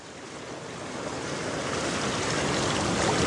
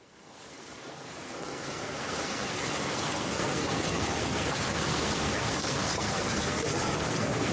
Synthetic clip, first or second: second